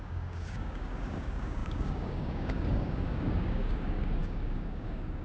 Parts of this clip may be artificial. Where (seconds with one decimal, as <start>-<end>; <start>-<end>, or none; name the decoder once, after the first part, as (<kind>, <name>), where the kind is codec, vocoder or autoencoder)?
0.0-5.2 (codec, DAC)